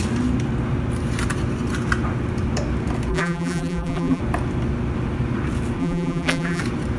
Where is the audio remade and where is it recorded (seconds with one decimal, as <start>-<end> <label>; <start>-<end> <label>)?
0.0-3.1 recorded; 3.1-4.2 remade; 4.2-5.8 recorded; 5.8-6.6 remade; 6.6-7.0 recorded